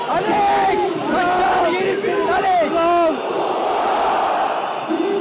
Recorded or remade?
recorded